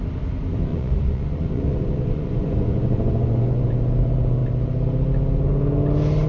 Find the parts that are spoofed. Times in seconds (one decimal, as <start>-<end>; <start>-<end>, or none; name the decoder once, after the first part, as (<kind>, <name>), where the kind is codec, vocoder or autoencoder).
0.7-3.7 (vocoder, Vocos)